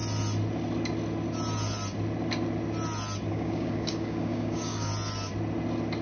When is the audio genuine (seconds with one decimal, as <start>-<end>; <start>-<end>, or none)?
0.0-3.3; 4.9-6.0